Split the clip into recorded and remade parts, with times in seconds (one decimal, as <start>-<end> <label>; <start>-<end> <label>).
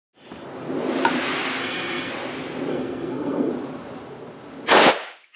0.0-1.6 recorded; 1.6-2.1 remade; 2.1-2.7 recorded; 2.7-3.5 remade; 3.5-5.4 recorded